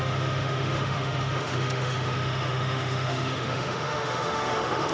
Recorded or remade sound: remade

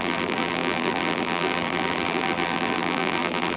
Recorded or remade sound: remade